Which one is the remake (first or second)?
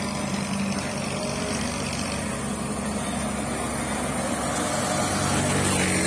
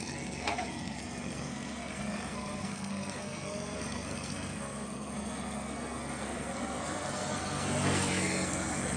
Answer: second